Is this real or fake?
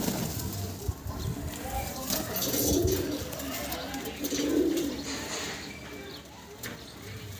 real